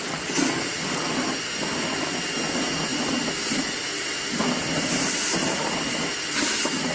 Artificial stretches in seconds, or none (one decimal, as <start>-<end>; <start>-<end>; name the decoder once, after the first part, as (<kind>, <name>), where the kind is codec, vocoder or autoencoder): 2.9-4.0 (vocoder, BigVGAN v2)